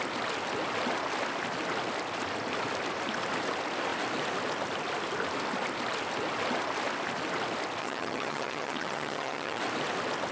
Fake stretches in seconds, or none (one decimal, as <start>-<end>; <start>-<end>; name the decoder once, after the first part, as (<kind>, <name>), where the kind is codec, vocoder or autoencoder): 7.8-9.6 (vocoder, HiFi-GAN)